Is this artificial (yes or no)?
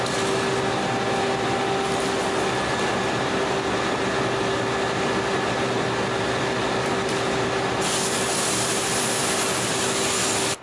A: no